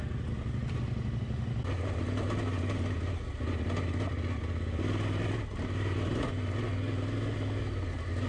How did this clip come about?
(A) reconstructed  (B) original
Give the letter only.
B